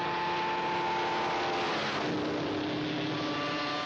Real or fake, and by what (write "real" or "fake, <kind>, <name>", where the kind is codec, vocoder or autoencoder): real